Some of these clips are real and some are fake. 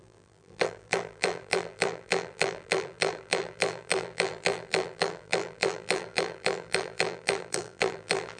fake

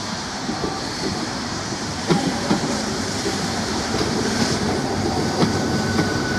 fake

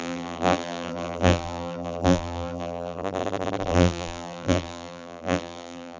fake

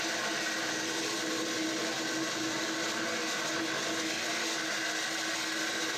real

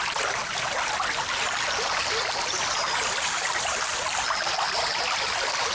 fake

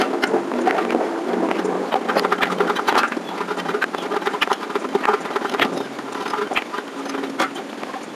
real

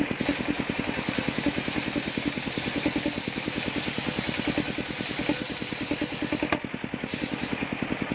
real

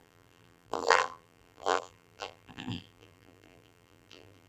fake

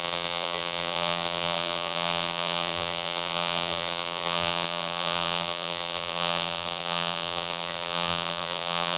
fake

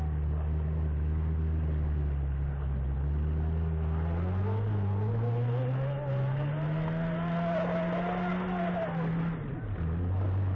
real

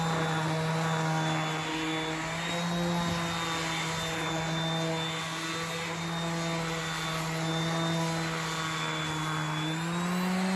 real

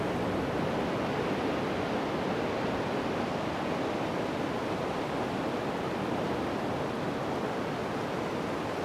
real